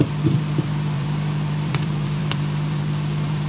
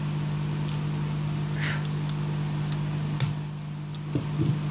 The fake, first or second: first